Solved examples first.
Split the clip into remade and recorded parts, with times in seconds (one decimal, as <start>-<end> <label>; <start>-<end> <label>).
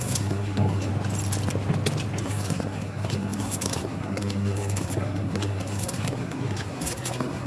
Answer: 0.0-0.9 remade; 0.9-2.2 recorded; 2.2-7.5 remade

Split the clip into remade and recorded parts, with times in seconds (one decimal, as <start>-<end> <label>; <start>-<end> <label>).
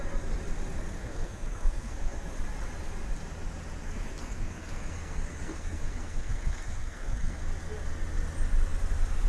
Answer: 0.0-1.0 recorded; 1.0-2.3 remade; 2.3-3.8 recorded; 3.8-7.4 remade; 7.4-9.3 recorded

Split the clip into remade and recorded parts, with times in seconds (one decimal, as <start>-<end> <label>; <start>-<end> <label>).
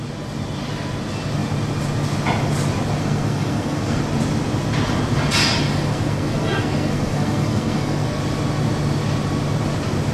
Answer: 0.0-3.0 recorded; 3.0-4.0 remade; 4.0-5.9 recorded; 5.9-8.2 remade; 8.2-10.1 recorded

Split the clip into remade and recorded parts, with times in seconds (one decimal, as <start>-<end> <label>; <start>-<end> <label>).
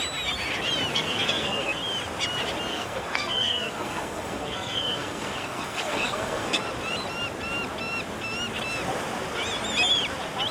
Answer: 0.0-0.9 recorded; 0.9-1.8 remade; 1.8-2.7 recorded; 2.7-6.6 remade; 6.6-10.5 recorded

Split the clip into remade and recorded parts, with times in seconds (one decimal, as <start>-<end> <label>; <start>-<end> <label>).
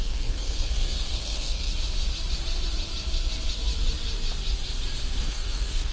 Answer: 0.0-1.7 remade; 1.7-5.2 recorded; 5.2-5.9 remade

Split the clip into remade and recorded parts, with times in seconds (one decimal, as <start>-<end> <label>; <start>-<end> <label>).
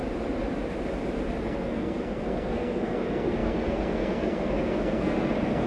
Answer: 0.0-1.4 recorded; 1.4-5.7 remade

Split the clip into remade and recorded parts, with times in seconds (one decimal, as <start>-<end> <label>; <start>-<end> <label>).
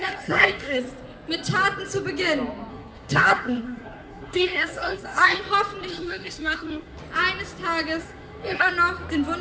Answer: 0.0-0.8 remade; 0.8-2.7 recorded; 2.7-5.4 remade; 5.4-5.9 recorded; 5.9-7.0 remade; 7.0-8.0 recorded; 8.0-8.7 remade; 8.7-9.4 recorded